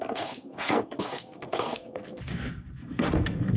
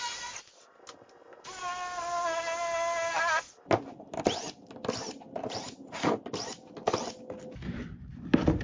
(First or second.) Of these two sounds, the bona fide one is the second